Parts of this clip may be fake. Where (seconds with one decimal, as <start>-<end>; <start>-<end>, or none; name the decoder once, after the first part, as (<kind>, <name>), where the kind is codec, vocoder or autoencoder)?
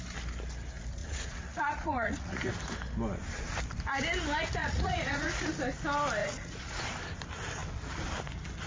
1.0-2.5 (vocoder, Vocos); 4.6-5.5; 6.2-6.8